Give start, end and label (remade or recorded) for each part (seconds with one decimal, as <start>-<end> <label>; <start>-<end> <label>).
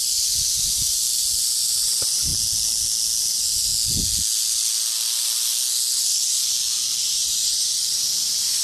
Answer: 0.0-2.3 remade; 2.3-3.2 recorded; 3.2-3.7 remade; 3.7-7.0 recorded; 7.0-8.6 remade